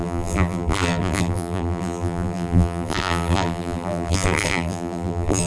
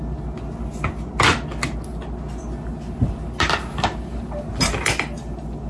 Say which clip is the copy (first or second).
first